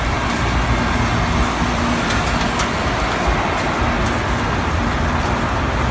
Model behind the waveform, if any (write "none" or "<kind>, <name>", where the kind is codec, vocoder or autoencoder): none